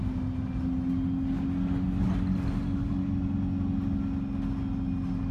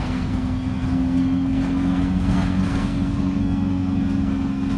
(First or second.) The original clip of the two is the first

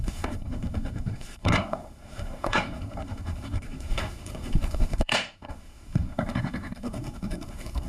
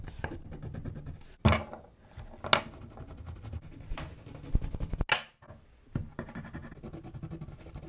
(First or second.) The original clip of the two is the second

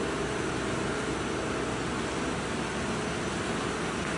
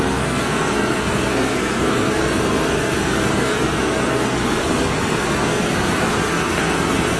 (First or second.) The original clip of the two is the first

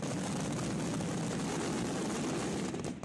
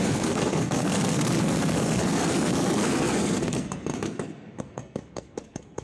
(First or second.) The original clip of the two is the first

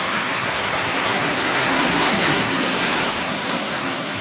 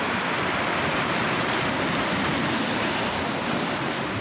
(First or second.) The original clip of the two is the second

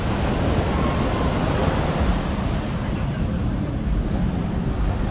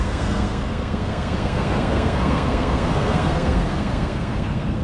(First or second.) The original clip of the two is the first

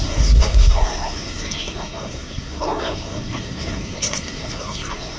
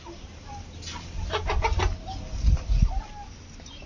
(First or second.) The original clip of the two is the second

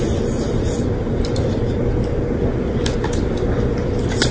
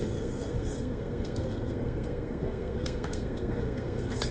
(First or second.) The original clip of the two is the first